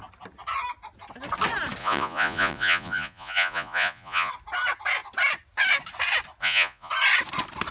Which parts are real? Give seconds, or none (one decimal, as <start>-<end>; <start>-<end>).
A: 0.0-1.8; 4.3-6.4; 6.9-7.7